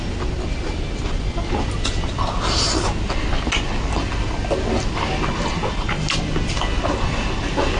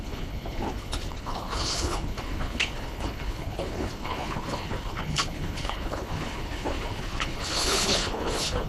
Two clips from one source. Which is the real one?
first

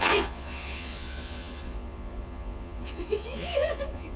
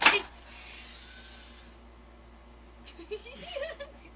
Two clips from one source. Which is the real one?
second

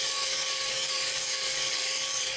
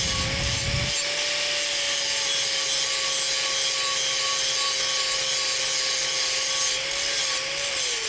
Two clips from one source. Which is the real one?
second